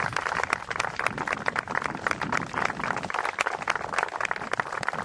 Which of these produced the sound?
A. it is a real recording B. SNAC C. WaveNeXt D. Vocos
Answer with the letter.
A